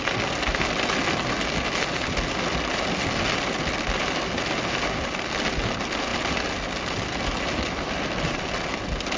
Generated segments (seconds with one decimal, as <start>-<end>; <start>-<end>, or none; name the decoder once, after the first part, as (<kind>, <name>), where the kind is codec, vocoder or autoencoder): none